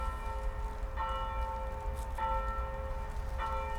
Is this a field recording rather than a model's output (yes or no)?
yes